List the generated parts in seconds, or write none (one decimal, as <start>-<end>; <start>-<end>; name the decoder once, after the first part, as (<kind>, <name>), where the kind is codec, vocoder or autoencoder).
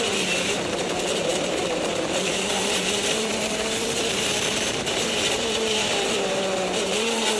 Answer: 0.0-7.4 (vocoder, BigVGAN v2)